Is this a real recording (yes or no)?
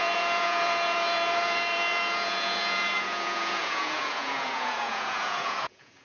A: no